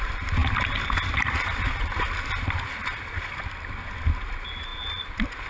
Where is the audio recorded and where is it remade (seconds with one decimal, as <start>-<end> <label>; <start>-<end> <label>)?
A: 0.0-5.5 recorded